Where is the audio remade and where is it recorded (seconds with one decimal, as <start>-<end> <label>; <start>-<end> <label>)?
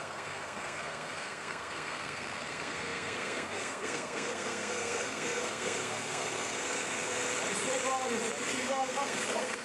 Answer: 0.0-7.2 remade; 7.2-8.4 recorded; 8.4-9.6 remade